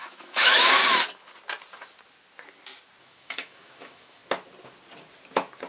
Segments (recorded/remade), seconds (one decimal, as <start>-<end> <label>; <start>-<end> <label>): 0.0-0.8 remade; 0.8-3.0 recorded; 3.0-4.2 remade; 4.2-5.7 recorded